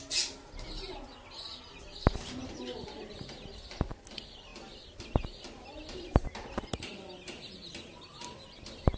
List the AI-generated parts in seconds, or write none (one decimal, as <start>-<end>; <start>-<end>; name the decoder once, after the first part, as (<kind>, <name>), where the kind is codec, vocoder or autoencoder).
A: none